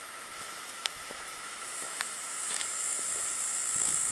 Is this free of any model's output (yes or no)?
no